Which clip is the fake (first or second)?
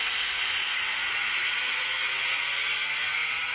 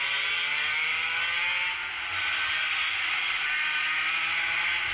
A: first